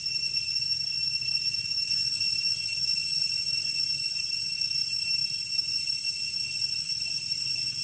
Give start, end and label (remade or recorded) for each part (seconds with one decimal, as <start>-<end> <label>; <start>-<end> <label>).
0.0-7.8 recorded